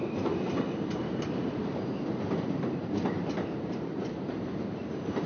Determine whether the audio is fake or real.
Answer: fake